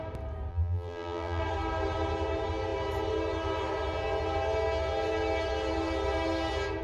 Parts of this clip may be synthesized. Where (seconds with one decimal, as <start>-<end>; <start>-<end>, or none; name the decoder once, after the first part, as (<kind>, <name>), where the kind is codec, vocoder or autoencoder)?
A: 0.5-1.4 (vocoder, BigVGAN v2)